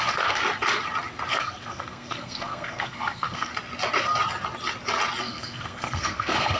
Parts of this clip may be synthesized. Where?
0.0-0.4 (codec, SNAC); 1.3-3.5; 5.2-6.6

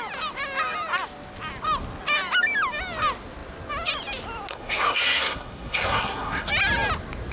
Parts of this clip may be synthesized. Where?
4.5-6.5 (codec, SNAC)

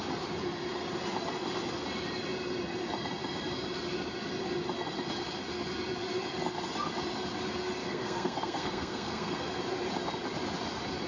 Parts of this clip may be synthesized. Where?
7.8-9.6 (codec, SNAC)

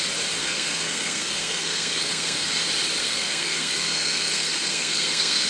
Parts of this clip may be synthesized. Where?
0.4-2.6 (codec, SNAC); 3.0-5.5

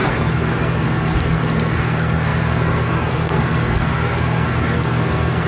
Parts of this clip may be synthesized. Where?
0.0-5.5 (codec, SNAC)

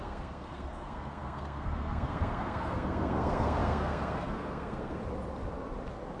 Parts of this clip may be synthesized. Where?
0.0-5.0 (codec, SNAC)

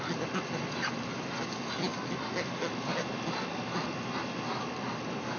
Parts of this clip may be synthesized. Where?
none